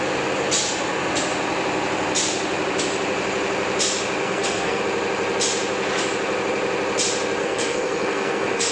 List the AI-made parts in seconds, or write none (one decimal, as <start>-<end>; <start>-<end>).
4.2-4.8; 7.4-8.7